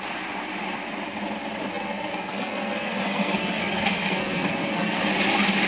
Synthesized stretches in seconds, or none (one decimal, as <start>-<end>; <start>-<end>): 1.7-5.1